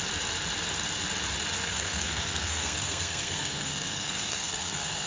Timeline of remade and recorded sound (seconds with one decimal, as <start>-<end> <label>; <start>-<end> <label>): 0.0-1.6 recorded; 1.6-5.1 remade